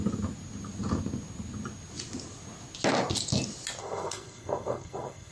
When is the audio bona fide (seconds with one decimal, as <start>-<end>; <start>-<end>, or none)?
0.0-3.8